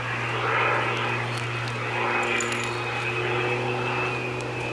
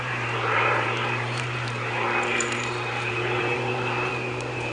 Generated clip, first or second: second